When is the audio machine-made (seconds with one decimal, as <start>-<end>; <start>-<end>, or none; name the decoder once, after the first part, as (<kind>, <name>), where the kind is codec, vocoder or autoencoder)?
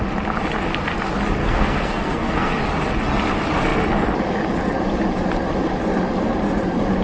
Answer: 1.4-2.6 (codec, SNAC)